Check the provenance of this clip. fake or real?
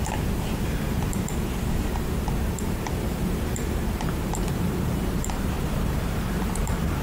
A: fake